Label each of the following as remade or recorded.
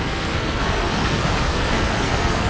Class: remade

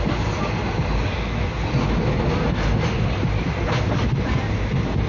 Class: recorded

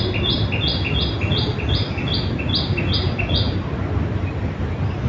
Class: recorded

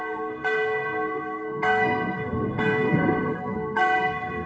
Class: remade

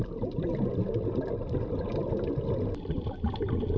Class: recorded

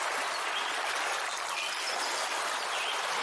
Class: recorded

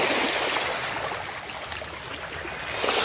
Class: recorded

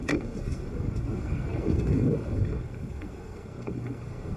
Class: remade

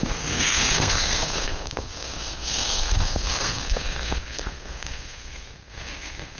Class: remade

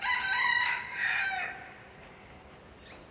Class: recorded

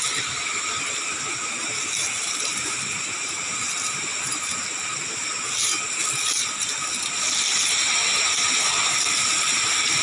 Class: recorded